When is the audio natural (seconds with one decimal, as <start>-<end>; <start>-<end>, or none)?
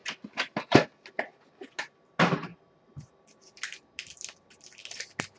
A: 0.0-5.4